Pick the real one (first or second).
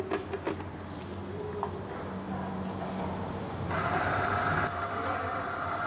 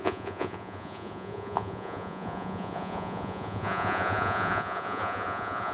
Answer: first